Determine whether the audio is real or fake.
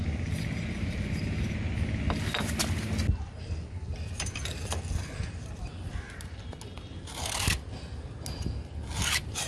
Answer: real